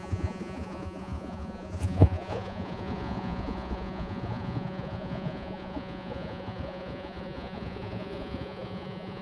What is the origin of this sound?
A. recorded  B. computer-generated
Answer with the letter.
B